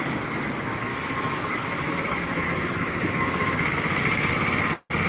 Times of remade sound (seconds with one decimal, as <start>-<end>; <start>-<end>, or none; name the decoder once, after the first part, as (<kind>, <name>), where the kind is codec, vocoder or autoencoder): 0.9-4.0 (autoencoder, DAC-VAE)